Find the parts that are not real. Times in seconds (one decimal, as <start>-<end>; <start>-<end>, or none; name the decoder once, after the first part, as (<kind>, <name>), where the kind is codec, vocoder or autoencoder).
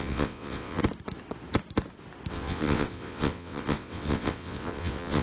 0.0-0.8 (vocoder, WaveNeXt); 2.3-5.2